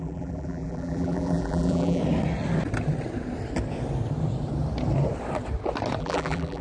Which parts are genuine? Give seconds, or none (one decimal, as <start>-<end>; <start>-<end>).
2.0-6.0